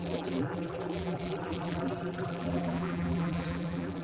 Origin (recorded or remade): remade